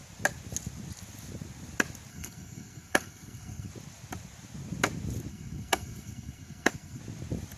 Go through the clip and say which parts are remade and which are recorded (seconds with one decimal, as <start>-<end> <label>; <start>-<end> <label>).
0.0-2.1 recorded; 2.1-3.7 remade; 3.7-5.3 recorded; 5.3-7.0 remade; 7.0-7.6 recorded

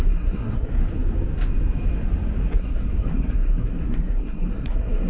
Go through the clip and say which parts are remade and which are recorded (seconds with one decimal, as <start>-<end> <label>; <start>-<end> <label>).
0.0-0.8 remade; 0.8-2.5 recorded; 2.5-5.1 remade

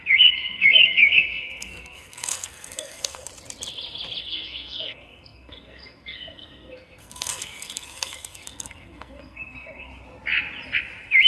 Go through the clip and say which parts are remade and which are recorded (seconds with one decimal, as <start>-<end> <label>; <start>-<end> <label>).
0.0-3.3 remade; 3.3-4.2 recorded; 4.2-9.9 remade; 9.9-11.3 recorded

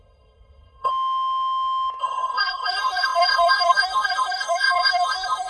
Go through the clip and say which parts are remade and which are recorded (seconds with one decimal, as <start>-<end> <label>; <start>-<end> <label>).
0.0-0.9 remade; 0.9-2.0 recorded; 2.0-5.5 remade

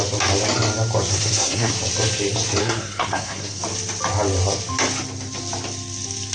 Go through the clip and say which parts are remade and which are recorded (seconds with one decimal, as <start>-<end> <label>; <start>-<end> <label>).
0.0-1.1 recorded; 1.1-1.7 remade; 1.7-2.6 recorded; 2.6-3.6 remade; 3.6-6.3 recorded

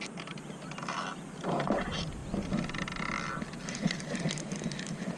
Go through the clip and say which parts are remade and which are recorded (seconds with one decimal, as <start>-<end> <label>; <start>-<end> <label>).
0.0-5.2 recorded